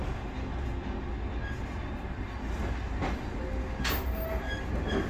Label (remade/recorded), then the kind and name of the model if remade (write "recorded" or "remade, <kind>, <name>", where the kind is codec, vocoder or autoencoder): recorded